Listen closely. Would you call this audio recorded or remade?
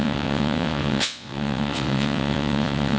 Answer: remade